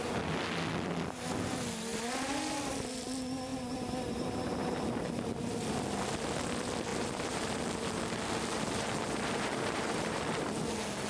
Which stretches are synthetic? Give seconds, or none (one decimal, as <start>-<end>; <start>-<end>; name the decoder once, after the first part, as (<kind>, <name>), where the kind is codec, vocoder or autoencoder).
3.5-5.7 (vocoder, BigVGAN v2); 6.9-10.7